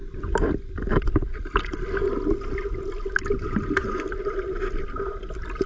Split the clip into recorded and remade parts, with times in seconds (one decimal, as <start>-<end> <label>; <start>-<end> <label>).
0.0-5.7 recorded